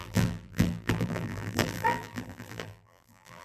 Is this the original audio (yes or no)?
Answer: no